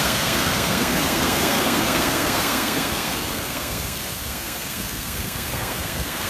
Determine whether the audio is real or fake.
fake